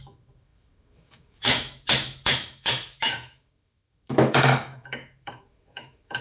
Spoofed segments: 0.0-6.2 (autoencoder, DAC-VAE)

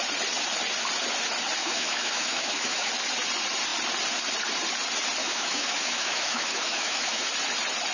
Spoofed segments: 1.6-2.9 (autoencoder, DAC-VAE); 5.2-7.3

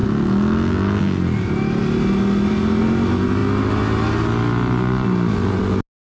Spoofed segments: none

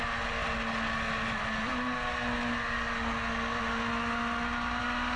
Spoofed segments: none

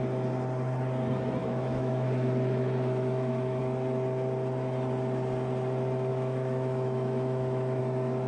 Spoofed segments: 1.4-3.6 (autoencoder, DAC-VAE); 6.1-7.8